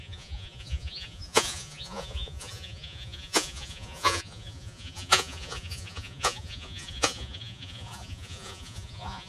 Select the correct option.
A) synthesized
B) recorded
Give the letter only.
A